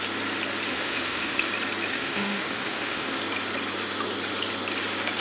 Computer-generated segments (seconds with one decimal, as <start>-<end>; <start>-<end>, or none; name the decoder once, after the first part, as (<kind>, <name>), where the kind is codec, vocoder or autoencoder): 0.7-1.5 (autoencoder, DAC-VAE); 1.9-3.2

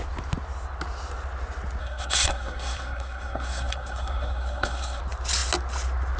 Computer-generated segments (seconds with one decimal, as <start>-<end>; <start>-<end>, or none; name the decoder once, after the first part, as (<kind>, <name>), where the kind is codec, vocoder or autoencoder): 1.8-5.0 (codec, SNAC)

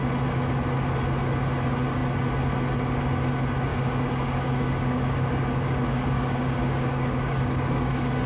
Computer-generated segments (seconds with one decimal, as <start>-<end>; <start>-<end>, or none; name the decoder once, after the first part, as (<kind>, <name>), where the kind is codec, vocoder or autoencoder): 3.7-8.3 (codec, DAC)

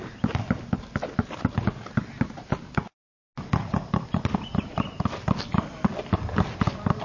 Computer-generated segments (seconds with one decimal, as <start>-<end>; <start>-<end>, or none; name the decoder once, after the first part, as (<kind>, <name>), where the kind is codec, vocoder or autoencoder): none

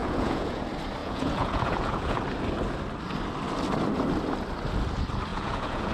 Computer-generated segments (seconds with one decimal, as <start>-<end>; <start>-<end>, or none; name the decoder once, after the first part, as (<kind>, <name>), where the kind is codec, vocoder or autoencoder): 0.0-0.6 (vocoder, Vocos); 1.0-2.2; 5.3-5.9

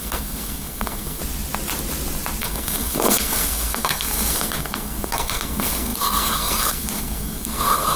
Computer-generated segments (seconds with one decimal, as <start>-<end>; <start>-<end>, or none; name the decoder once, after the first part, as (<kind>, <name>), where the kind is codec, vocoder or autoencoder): 0.0-1.2 (codec, SNAC); 2.4-8.0

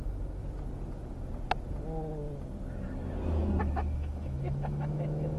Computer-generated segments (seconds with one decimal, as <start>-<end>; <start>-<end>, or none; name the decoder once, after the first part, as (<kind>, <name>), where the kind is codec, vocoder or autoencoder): 0.0-0.4 (autoencoder, DAC-VAE); 3.6-5.4

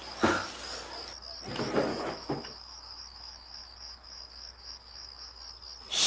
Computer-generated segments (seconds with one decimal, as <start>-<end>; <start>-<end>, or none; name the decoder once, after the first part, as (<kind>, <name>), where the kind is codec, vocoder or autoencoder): 1.9-5.4 (autoencoder, DAC-VAE)